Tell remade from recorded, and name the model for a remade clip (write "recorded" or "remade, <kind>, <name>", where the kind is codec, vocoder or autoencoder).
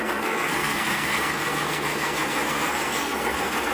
remade, codec, SNAC